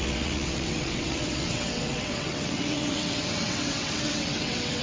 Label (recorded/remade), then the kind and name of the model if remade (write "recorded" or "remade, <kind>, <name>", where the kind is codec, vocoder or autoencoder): remade, vocoder, WaveNeXt